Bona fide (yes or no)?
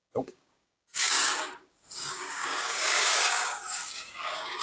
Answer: no